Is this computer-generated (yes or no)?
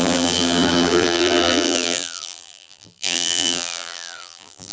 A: yes